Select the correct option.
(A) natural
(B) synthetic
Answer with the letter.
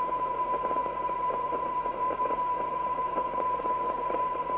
B